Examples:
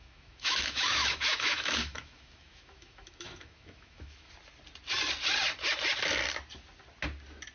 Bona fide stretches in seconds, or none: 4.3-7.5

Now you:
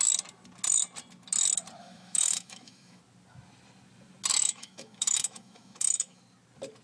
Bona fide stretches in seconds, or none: 0.0-1.8; 3.0-4.3; 6.2-6.8

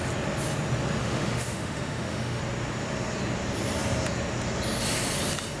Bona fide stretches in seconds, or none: 0.0-1.0; 2.4-5.6

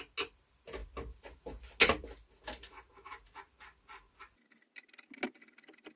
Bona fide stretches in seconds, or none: 0.0-6.0

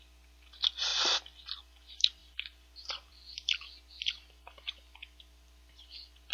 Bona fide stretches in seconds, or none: 0.0-6.3

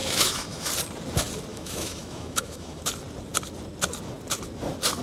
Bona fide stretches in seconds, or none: 0.7-1.5; 2.8-5.0

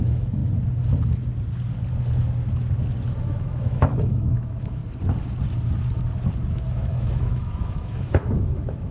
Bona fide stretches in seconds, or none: 0.4-3.2; 4.8-6.7